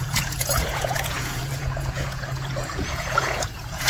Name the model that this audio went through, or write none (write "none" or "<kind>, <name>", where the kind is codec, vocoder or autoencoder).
vocoder, Vocos